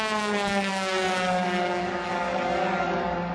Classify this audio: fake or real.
fake